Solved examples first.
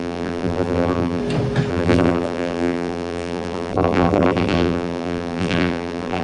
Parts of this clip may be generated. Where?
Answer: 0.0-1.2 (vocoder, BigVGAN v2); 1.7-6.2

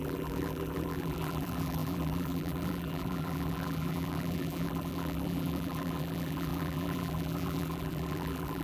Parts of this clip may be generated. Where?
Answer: 0.0-8.6 (vocoder, BigVGAN v2)

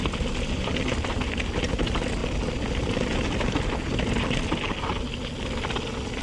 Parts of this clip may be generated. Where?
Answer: none